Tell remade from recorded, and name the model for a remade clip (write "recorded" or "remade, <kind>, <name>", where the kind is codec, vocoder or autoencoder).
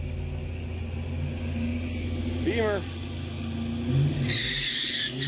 recorded